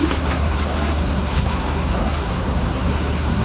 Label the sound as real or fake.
fake